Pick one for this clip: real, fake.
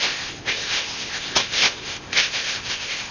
fake